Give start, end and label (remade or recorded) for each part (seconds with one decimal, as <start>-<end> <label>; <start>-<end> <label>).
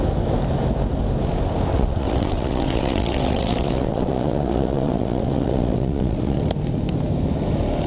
0.0-1.7 recorded; 1.7-6.4 remade; 6.4-7.9 recorded